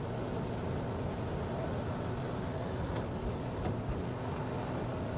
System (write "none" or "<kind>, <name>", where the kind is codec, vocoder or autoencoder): none